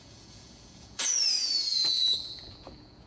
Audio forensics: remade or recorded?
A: remade